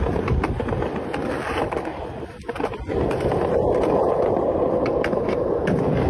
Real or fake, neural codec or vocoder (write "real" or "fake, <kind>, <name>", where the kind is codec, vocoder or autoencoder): real